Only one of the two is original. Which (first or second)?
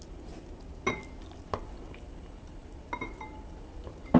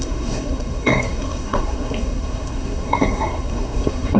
first